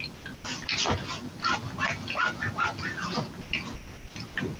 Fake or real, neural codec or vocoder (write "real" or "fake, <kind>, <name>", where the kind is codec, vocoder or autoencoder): real